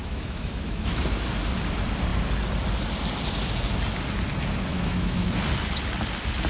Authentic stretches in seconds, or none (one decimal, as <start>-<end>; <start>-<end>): 1.0-4.7; 5.4-6.5